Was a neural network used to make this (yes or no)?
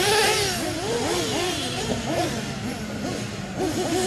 no